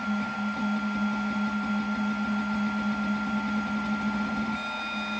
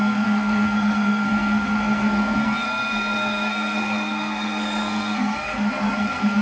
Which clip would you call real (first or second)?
first